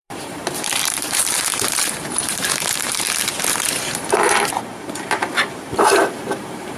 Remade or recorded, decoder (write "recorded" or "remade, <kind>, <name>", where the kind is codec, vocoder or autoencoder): remade, vocoder, BigVGAN v2